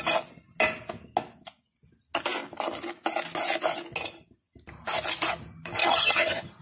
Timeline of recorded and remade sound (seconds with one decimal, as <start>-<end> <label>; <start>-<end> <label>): 0.0-5.8 recorded; 5.8-6.6 remade